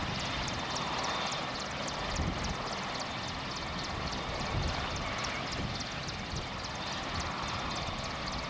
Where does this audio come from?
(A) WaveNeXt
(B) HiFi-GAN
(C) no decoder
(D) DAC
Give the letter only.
C